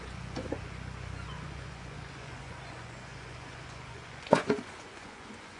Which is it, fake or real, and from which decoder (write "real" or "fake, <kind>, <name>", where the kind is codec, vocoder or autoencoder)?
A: fake, vocoder, Vocos